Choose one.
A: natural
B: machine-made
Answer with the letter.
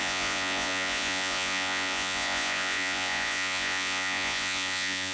B